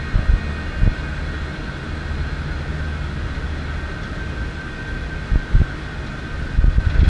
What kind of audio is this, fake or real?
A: real